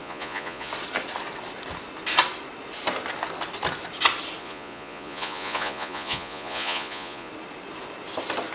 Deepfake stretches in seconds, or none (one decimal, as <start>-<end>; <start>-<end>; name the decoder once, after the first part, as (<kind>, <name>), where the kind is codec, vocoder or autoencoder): 0.0-0.7 (vocoder, Vocos); 4.4-7.3